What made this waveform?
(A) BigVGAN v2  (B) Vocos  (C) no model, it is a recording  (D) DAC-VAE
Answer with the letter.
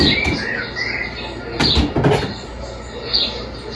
C